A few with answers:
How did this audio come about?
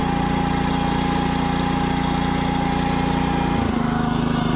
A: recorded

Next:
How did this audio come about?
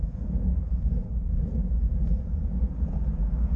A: remade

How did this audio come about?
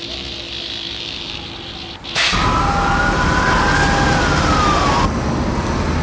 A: recorded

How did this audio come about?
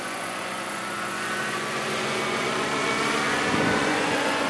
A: remade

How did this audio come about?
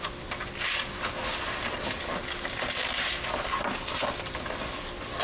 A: recorded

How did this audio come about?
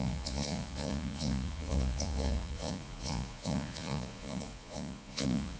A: remade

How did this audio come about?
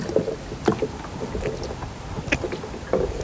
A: recorded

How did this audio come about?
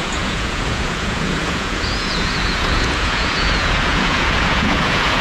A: remade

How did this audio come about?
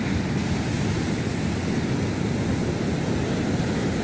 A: recorded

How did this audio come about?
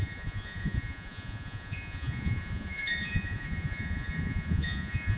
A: remade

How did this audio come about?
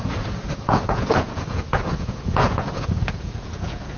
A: remade